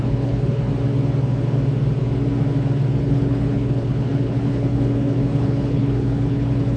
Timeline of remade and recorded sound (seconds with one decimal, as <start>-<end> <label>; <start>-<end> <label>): 0.0-0.7 remade; 0.7-3.0 recorded; 3.0-6.8 remade